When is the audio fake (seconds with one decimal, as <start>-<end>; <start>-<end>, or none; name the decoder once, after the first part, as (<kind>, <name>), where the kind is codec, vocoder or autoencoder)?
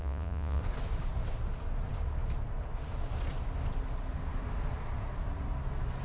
0.0-0.6 (vocoder, Vocos)